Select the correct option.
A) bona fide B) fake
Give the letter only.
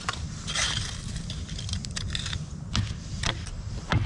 A